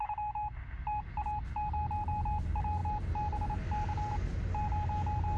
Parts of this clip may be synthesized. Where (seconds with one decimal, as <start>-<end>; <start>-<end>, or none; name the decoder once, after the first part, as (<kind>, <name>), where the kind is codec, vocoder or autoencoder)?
none